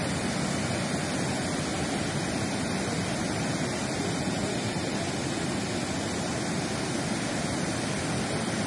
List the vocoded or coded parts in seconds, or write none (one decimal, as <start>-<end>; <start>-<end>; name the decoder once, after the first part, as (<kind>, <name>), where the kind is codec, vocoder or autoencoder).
none